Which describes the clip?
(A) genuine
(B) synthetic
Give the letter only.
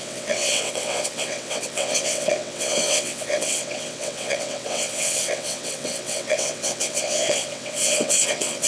B